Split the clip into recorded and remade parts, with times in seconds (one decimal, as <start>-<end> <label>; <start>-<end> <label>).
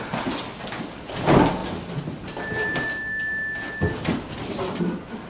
0.0-5.3 recorded